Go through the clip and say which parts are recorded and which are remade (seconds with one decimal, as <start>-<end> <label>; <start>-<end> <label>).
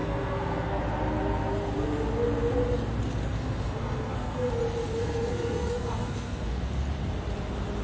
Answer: 0.0-0.8 remade; 0.8-3.3 recorded; 3.3-4.5 remade; 4.5-5.0 recorded; 5.0-6.6 remade; 6.6-7.8 recorded